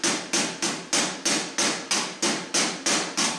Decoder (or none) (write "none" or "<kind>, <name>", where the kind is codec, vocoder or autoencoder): none